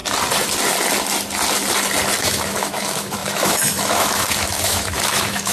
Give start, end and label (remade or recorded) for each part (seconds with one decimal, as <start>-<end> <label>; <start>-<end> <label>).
0.0-2.2 recorded; 2.2-5.5 remade